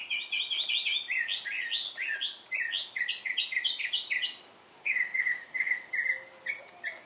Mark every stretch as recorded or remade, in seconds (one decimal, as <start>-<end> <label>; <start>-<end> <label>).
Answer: 0.0-4.7 recorded; 4.7-5.9 remade; 5.9-7.1 recorded